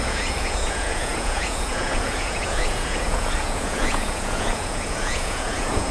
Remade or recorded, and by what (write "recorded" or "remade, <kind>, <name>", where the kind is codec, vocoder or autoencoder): remade, vocoder, Vocos